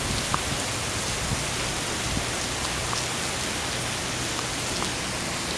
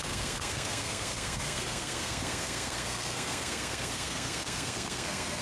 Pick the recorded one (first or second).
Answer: first